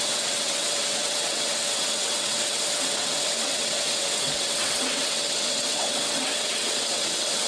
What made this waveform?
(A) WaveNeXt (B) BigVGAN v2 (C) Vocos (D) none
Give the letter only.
A